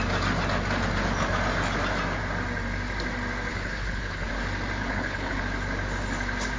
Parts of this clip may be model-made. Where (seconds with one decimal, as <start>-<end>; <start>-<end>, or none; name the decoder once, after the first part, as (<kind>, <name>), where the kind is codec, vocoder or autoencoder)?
3.5-4.3 (codec, HILCodec); 4.8-5.4